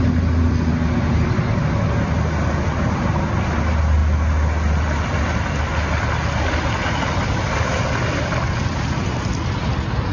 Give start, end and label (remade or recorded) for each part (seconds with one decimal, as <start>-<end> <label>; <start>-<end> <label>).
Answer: 0.0-10.1 recorded